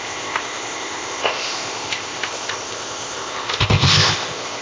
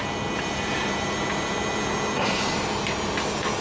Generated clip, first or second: first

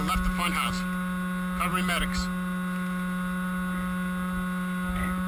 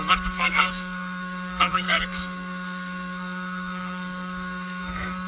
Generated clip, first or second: second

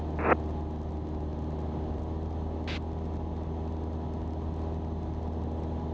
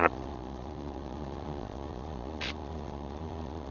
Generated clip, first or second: second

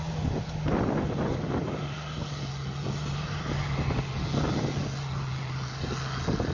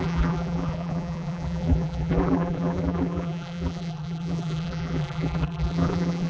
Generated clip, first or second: second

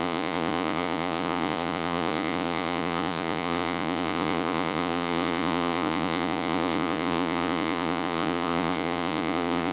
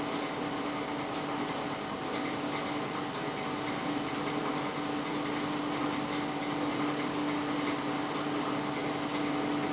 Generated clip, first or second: first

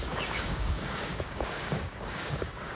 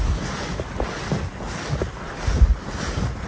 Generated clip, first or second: first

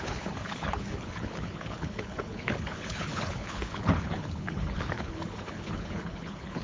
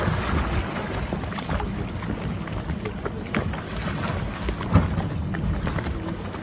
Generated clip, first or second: first